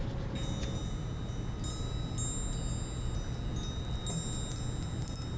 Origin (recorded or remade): recorded